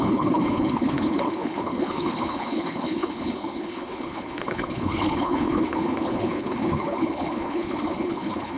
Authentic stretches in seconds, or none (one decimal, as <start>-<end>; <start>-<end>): none